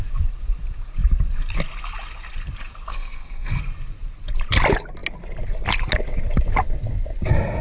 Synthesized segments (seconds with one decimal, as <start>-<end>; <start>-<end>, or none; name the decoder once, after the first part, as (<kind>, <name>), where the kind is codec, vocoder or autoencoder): 2.9-3.6 (codec, SNAC)